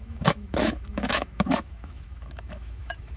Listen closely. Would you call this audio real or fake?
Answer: fake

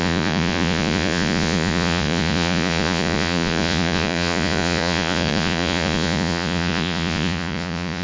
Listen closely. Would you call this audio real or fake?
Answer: fake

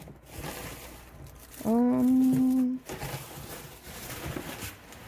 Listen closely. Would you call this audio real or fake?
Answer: real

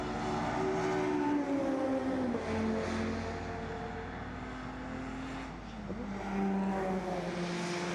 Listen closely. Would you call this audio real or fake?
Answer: real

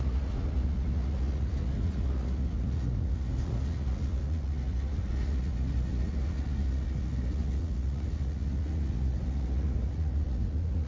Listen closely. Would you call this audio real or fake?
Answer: fake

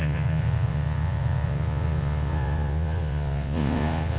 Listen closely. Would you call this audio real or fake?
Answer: fake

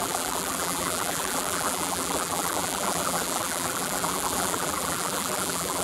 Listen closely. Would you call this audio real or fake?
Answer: fake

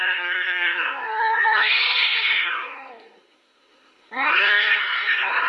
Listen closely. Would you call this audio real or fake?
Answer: fake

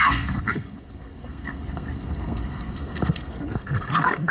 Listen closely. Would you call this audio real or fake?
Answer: fake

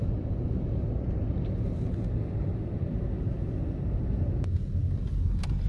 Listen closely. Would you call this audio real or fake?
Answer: real